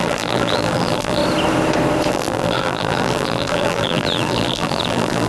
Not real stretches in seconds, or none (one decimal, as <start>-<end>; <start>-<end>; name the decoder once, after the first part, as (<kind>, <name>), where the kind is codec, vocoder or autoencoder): 0.0-1.2 (vocoder, BigVGAN v2); 2.1-5.3